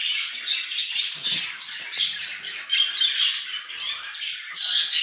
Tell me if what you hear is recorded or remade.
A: recorded